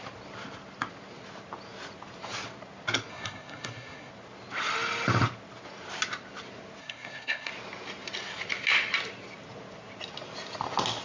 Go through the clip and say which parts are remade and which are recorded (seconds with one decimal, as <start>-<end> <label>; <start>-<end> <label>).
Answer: 0.0-3.1 recorded; 3.1-4.1 remade; 4.1-6.8 recorded; 6.8-7.5 remade; 7.5-11.0 recorded